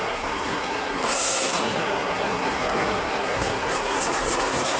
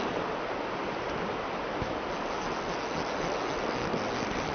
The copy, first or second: first